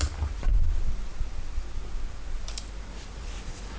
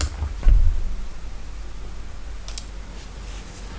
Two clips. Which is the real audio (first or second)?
second